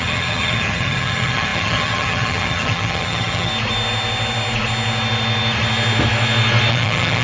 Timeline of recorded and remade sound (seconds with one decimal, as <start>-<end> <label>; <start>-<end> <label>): 0.0-3.5 remade; 3.5-6.7 recorded; 6.7-7.2 remade